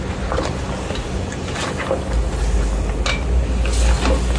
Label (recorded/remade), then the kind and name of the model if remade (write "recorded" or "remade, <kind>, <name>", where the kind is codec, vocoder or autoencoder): recorded